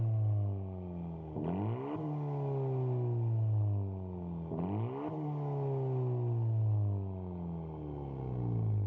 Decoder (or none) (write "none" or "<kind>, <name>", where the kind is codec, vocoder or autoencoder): none